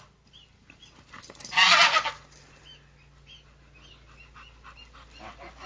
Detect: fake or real real